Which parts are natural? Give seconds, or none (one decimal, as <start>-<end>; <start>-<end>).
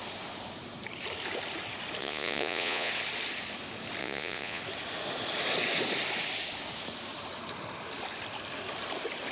0.0-2.0; 2.9-4.0; 4.6-9.3